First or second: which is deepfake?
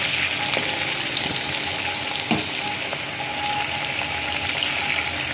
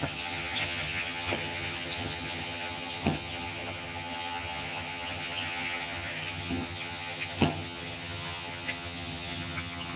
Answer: second